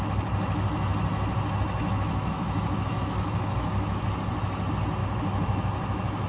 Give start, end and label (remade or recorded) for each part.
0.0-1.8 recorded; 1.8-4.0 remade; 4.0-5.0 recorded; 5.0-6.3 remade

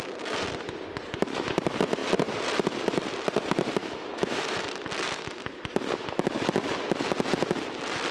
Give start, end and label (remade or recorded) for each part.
0.0-3.8 recorded; 3.8-4.6 remade; 4.6-8.1 recorded

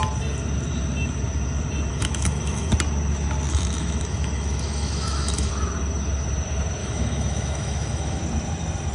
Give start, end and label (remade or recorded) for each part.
0.0-1.9 recorded; 1.9-2.7 remade; 2.7-3.5 recorded; 3.5-5.5 remade; 5.5-6.8 recorded; 6.8-8.2 remade; 8.2-8.9 recorded

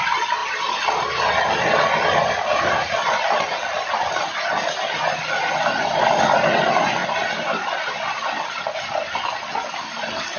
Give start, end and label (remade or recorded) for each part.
0.0-10.4 recorded